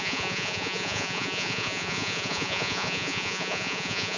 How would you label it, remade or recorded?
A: remade